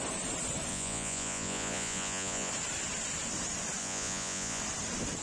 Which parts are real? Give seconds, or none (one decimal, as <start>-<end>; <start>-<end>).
0.0-0.7; 2.5-3.8; 4.6-5.2